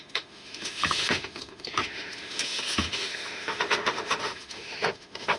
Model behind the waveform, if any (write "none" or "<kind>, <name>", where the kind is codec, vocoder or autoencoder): autoencoder, DAC-VAE